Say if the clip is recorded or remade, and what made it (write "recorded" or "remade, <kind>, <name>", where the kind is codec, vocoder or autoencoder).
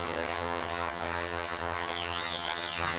remade, vocoder, HiFi-GAN